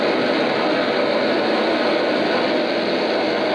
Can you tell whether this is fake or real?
real